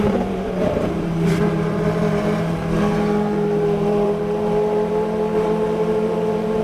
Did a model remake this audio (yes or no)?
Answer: yes